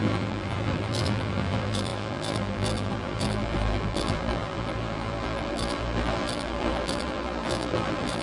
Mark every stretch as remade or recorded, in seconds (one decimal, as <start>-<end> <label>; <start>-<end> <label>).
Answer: 0.0-8.2 remade